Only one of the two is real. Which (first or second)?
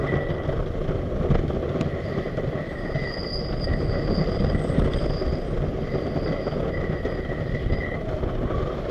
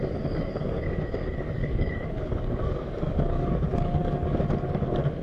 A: first